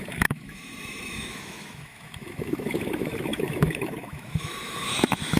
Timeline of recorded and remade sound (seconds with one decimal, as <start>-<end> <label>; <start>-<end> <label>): 0.0-5.4 remade